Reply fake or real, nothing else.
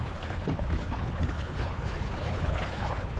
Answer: fake